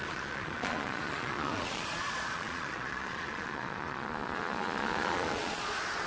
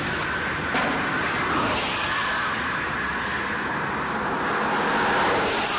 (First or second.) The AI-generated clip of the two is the first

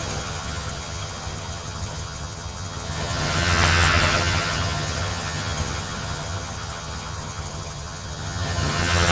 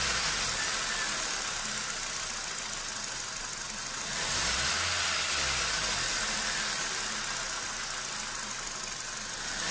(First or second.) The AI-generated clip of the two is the first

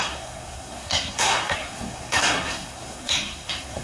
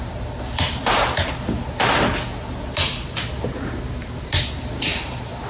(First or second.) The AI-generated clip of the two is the first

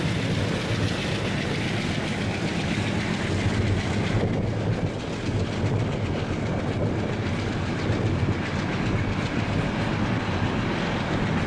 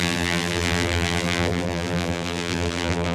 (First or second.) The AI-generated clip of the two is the second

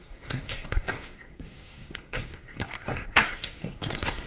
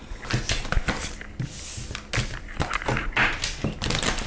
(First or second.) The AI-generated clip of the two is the first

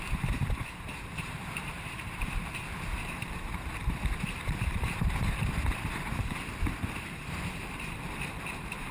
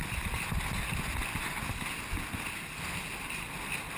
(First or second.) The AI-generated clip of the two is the first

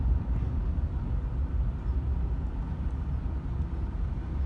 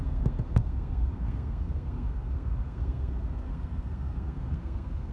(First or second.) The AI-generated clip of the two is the second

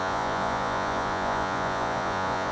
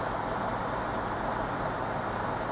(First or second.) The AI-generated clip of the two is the first